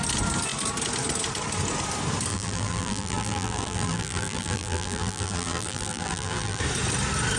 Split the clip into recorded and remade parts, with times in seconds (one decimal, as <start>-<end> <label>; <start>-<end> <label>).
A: 0.0-2.3 recorded; 2.3-6.6 remade; 6.6-7.4 recorded